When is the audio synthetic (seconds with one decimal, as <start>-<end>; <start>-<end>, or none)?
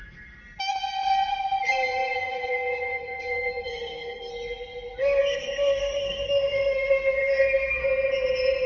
0.0-0.4; 1.3-4.3; 5.0-7.8